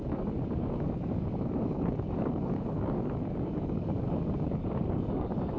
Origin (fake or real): fake